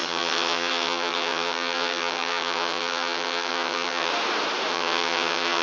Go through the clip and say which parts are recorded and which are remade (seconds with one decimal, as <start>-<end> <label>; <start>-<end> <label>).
0.0-4.1 remade; 4.1-4.7 recorded; 4.7-5.6 remade